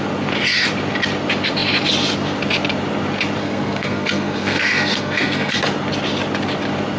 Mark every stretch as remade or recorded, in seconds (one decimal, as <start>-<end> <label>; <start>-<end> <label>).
0.0-3.4 recorded; 3.4-5.6 remade; 5.6-7.0 recorded